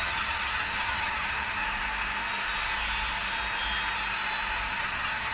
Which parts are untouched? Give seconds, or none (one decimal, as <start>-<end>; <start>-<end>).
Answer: 1.6-4.8